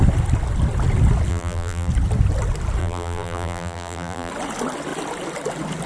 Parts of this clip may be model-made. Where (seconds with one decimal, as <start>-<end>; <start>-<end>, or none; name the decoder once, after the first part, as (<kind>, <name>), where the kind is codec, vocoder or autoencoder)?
1.3-1.9 (vocoder, BigVGAN v2); 2.8-4.3